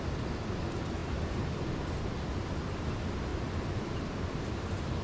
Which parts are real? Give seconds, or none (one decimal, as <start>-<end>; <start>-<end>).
1.0-2.3